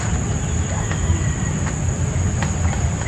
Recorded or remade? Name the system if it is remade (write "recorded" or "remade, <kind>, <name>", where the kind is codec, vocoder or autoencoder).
recorded